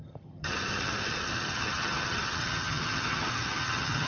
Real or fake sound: fake